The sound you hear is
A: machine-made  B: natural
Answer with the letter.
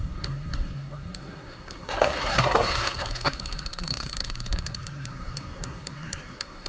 A